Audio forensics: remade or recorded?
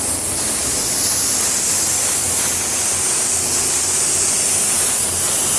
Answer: recorded